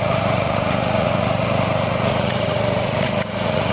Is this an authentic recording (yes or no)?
no